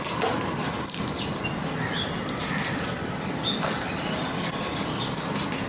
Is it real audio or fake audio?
real